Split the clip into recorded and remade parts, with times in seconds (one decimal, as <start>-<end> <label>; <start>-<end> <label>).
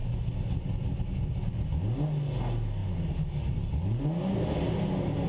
0.0-5.3 recorded